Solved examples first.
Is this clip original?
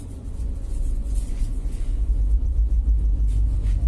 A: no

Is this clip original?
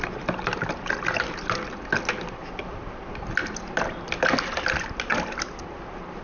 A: yes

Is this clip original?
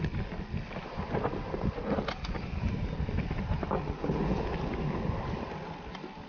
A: yes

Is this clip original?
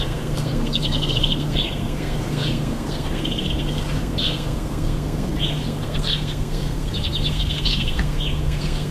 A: no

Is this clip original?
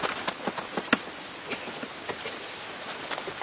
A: yes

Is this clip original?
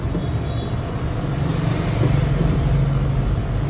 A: yes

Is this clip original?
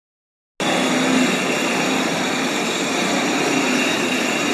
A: yes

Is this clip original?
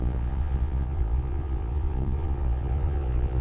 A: no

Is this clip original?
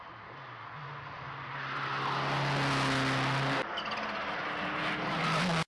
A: yes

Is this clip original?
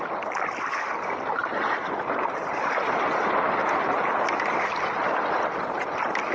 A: yes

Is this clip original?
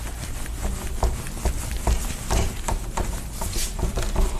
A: yes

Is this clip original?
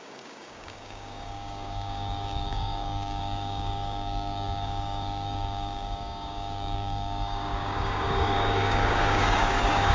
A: no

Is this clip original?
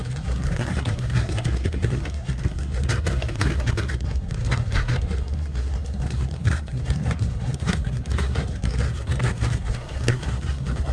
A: no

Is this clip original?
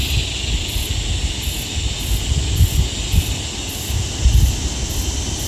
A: yes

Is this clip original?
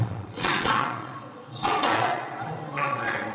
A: no